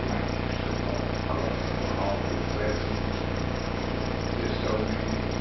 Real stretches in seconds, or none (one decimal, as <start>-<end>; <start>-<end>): 0.0-1.3; 4.2-5.4